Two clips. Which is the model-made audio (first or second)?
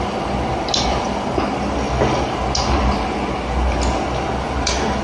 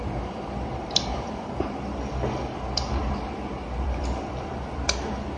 second